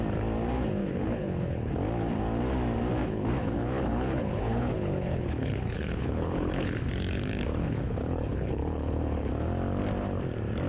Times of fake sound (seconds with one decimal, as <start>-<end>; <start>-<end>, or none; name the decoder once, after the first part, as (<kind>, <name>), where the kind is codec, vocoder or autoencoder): 0.8-1.7 (codec, HILCodec); 3.0-6.9; 7.5-9.3